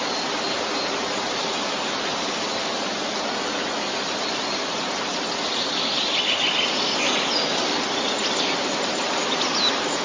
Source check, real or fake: real